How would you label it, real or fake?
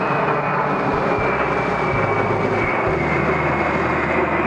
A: real